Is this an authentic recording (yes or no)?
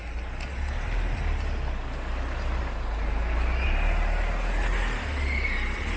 yes